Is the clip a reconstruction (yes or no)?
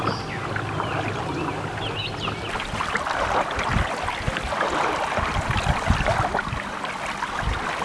no